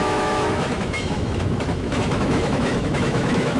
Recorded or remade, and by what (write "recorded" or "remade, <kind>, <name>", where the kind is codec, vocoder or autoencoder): remade, autoencoder, DAC-VAE